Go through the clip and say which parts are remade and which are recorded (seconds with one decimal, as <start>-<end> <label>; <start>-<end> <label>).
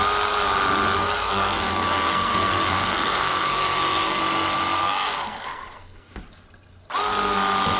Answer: 0.0-1.0 recorded; 1.0-4.2 remade; 4.2-4.8 recorded; 4.8-6.1 remade; 6.1-7.8 recorded